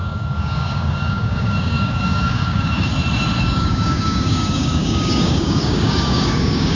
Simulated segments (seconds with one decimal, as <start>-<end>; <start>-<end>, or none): 0.0-2.9; 3.4-6.8